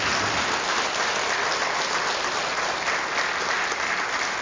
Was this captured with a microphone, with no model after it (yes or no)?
yes